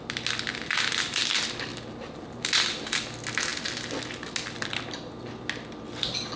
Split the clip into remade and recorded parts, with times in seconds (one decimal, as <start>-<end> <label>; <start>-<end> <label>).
0.0-1.7 recorded; 1.7-2.9 remade; 2.9-6.4 recorded